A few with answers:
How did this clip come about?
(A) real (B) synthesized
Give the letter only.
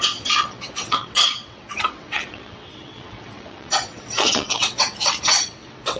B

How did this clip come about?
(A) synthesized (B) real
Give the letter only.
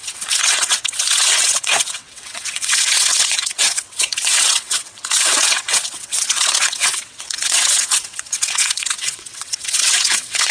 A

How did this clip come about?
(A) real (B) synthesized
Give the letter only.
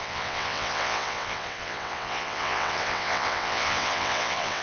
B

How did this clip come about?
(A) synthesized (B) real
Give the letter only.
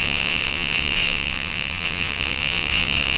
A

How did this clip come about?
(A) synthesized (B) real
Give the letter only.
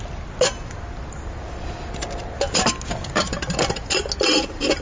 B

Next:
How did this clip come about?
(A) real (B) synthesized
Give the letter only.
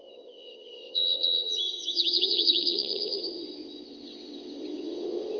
B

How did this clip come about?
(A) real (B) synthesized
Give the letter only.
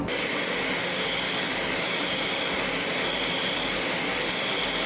A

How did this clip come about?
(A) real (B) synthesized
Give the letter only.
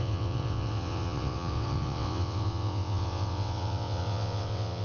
B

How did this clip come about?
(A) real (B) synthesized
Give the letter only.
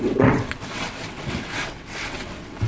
B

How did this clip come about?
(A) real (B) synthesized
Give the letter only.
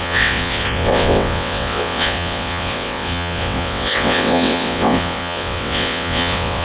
B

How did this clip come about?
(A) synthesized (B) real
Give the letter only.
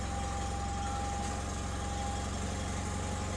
B